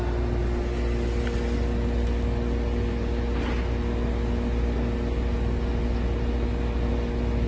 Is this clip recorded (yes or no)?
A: yes